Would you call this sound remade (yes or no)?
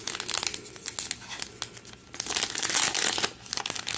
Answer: no